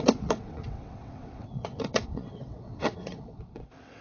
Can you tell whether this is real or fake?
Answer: fake